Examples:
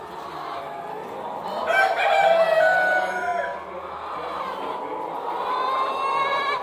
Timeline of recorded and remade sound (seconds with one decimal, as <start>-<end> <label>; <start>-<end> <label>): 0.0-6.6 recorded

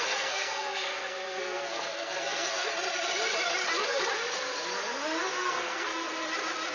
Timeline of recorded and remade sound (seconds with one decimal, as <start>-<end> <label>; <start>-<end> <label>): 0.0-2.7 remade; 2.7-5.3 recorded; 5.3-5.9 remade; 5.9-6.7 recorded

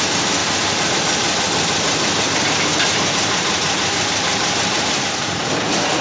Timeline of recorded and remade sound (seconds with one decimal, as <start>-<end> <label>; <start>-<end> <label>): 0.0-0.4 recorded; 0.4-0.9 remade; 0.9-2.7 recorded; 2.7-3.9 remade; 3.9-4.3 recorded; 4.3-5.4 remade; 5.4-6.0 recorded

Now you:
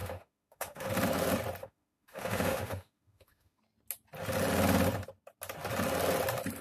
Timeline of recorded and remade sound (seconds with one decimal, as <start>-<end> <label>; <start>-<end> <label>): 0.0-0.9 remade; 0.9-1.6 recorded; 1.6-3.6 remade; 3.6-6.6 recorded